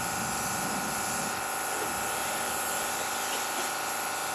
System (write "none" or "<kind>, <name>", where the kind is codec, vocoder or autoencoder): none